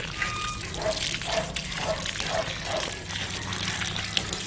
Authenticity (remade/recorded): recorded